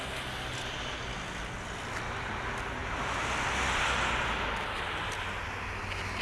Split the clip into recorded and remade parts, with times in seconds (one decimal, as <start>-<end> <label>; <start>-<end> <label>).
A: 0.0-6.2 recorded